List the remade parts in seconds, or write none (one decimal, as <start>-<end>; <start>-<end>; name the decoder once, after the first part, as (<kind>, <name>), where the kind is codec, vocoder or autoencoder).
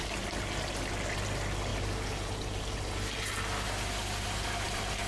none